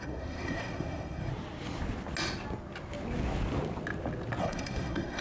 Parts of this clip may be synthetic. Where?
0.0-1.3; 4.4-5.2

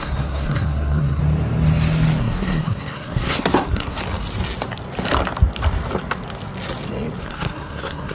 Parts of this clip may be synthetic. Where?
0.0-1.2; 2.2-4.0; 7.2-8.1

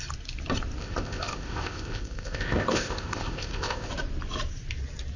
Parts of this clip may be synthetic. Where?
0.8-3.9